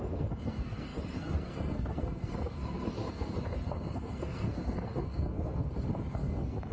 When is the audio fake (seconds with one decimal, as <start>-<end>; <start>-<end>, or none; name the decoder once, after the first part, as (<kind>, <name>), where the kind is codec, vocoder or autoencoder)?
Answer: 0.0-6.7 (codec, SNAC)